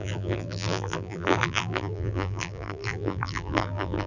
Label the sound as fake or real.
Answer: fake